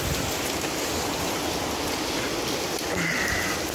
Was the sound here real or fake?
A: real